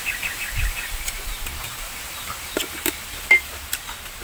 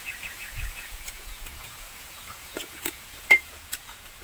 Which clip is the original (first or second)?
first